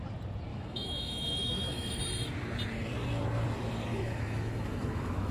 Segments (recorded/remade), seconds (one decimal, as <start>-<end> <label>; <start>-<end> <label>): 0.0-0.5 recorded; 0.5-2.0 remade; 2.0-3.9 recorded; 3.9-5.3 remade